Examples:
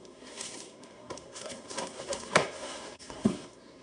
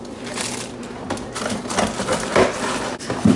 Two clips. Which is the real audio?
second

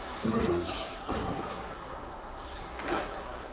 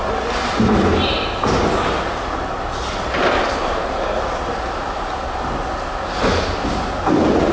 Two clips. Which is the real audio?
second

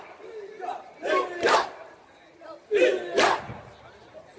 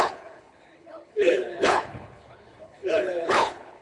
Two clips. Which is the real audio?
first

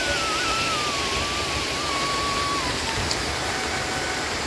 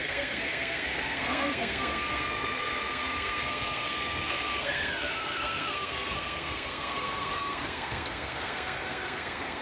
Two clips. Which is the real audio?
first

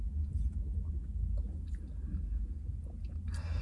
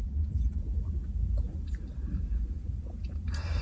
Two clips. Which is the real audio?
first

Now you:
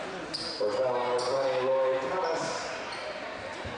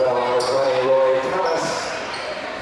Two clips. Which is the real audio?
first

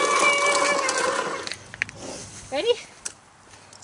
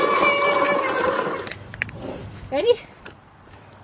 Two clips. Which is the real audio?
first